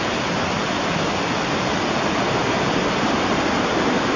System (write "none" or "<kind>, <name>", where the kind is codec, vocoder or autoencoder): none